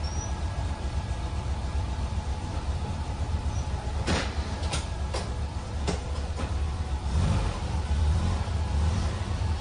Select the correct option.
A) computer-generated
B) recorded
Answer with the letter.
A